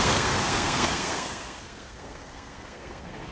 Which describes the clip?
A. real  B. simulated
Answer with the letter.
B